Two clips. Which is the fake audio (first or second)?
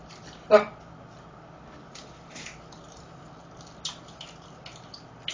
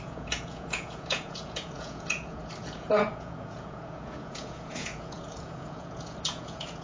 second